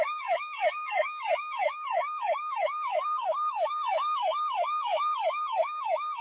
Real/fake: fake